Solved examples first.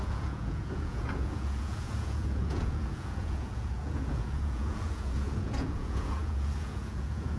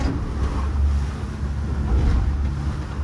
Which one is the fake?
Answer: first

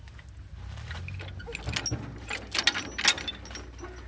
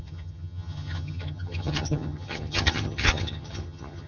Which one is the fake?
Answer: second